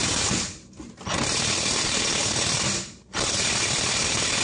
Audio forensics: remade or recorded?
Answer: remade